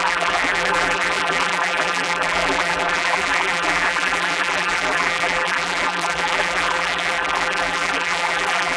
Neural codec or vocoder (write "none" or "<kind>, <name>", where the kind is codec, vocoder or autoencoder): vocoder, BigVGAN v2